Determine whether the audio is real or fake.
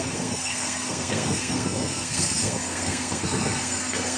fake